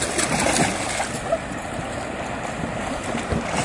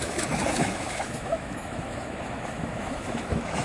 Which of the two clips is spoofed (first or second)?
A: second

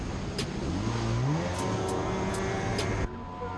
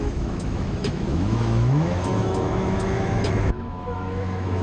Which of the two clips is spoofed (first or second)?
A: second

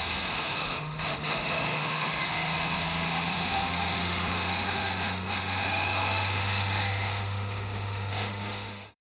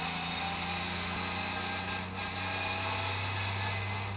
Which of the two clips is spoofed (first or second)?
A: first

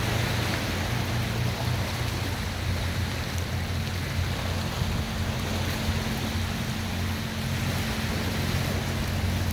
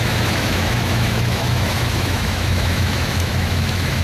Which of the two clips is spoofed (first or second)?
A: second